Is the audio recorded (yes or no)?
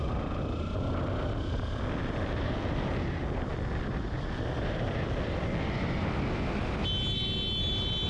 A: yes